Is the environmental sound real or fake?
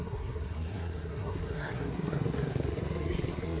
fake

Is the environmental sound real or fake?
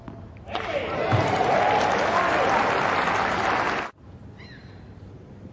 real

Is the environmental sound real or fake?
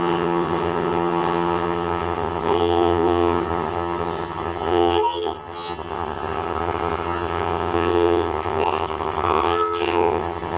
fake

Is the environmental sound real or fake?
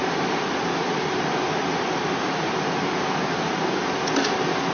real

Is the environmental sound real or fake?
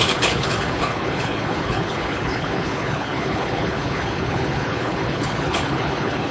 fake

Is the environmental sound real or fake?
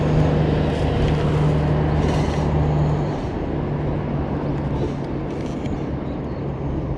real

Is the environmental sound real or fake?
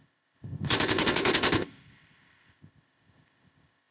fake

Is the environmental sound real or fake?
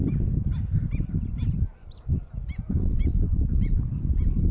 real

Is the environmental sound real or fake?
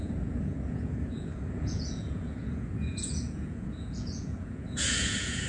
fake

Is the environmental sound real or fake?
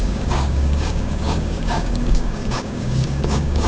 fake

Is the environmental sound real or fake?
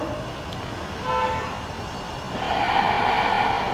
real